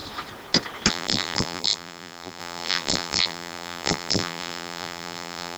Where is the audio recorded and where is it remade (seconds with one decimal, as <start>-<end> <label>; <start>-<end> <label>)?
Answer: 0.0-0.9 recorded; 0.9-5.6 remade